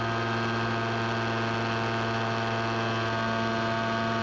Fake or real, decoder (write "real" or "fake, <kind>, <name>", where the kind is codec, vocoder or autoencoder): real